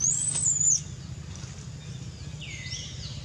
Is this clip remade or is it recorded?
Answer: recorded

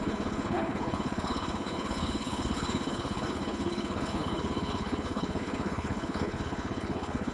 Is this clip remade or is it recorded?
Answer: remade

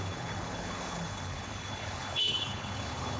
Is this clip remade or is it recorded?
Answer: remade